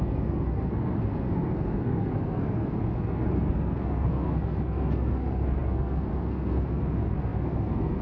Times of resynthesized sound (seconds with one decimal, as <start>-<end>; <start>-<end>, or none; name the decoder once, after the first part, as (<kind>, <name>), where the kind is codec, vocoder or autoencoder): 0.0-8.0 (codec, SNAC)